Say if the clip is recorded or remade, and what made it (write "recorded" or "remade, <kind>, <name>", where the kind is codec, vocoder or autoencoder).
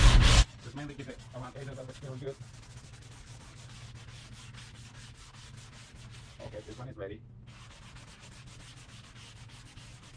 recorded